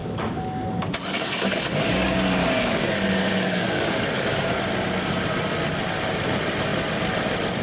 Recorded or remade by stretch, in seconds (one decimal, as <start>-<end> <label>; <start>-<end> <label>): 0.0-4.6 remade; 4.6-7.6 recorded